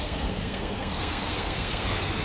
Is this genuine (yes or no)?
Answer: no